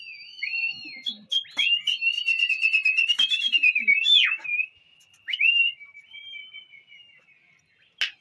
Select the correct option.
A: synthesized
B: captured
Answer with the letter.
B